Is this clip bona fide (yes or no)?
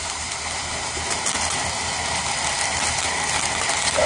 yes